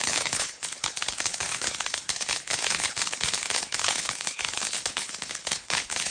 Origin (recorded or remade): remade